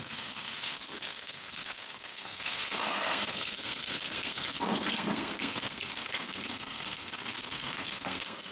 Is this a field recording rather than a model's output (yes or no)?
no